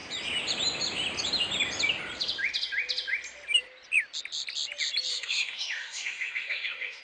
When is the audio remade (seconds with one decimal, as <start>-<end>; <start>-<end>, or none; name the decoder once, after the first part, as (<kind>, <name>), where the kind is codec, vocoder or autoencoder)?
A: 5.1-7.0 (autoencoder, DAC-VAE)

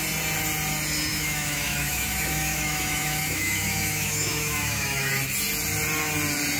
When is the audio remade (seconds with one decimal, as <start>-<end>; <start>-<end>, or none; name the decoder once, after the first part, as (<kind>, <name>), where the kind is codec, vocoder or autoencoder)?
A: 1.1-5.1 (autoencoder, DAC-VAE)

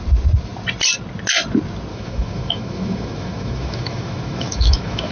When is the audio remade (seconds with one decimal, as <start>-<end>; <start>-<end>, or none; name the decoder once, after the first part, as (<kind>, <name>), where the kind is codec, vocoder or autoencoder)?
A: 1.9-5.1 (autoencoder, DAC-VAE)

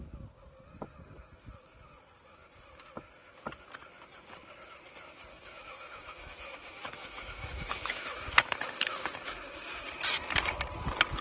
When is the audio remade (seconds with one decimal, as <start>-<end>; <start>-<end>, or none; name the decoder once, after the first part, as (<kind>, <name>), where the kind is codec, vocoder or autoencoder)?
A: 5.3-9.9 (autoencoder, DAC-VAE)

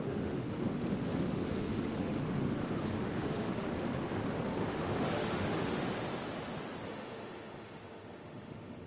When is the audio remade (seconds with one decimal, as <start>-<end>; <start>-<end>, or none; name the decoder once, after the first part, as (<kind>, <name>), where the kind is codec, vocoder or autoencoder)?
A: 0.0-5.9 (autoencoder, DAC-VAE); 6.9-8.9

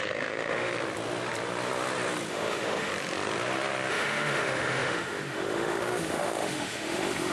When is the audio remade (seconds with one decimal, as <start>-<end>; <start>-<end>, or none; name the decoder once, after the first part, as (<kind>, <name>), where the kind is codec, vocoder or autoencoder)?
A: 0.0-0.7 (autoencoder, DAC-VAE); 2.3-2.9; 3.9-7.3

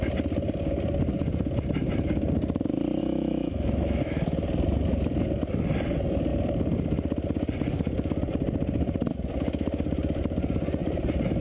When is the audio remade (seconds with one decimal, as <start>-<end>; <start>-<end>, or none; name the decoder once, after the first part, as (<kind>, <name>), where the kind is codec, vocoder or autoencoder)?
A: 3.0-4.0 (autoencoder, DAC-VAE)